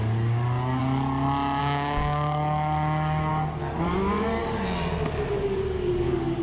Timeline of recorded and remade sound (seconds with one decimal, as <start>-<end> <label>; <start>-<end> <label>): 0.0-0.8 remade; 0.8-1.6 recorded; 1.6-3.3 remade; 3.3-3.9 recorded; 3.9-4.4 remade; 4.4-5.3 recorded; 5.3-6.4 remade